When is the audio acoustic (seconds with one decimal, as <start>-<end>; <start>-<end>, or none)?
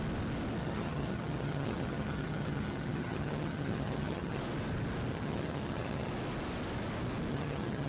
0.0-0.6; 4.4-5.1; 6.1-7.3